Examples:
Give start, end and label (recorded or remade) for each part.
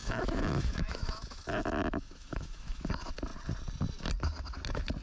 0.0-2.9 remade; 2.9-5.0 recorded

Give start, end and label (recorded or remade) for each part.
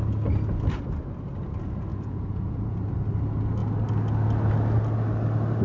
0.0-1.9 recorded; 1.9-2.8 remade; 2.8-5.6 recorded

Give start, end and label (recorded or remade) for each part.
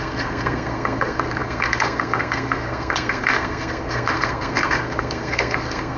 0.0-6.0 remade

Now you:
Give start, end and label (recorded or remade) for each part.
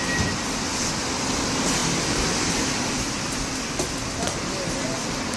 0.0-5.4 recorded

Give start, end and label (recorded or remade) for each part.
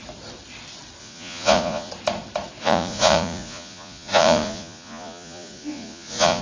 0.0-1.0 recorded; 1.0-1.9 remade; 1.9-2.6 recorded; 2.6-6.4 remade